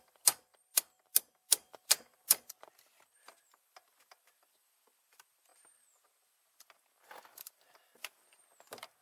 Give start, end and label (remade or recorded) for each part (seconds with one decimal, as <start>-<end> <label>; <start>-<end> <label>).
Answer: 0.0-5.5 remade; 5.5-7.2 recorded; 7.2-9.0 remade